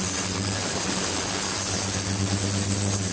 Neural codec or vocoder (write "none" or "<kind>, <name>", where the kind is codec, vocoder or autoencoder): none